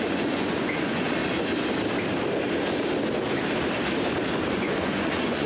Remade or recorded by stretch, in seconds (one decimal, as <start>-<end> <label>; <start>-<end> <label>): 0.0-1.2 remade; 1.2-4.5 recorded; 4.5-5.5 remade